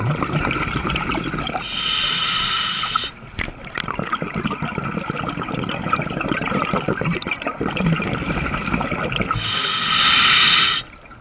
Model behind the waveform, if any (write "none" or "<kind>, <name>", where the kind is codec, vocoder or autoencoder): none